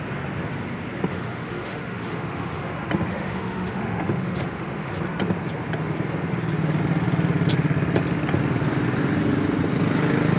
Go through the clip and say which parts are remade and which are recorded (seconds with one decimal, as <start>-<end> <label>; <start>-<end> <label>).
0.0-1.1 recorded; 1.1-2.7 remade; 2.7-3.1 recorded; 3.1-4.9 remade; 4.9-10.4 recorded